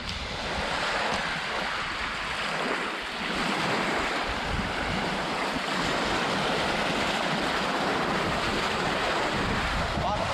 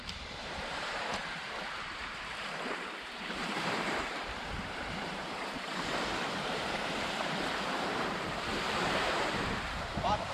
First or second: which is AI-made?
second